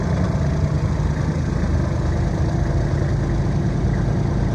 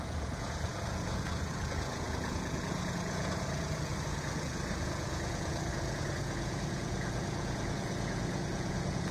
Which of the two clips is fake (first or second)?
second